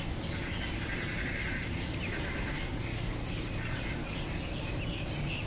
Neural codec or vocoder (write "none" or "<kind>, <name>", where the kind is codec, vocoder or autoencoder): none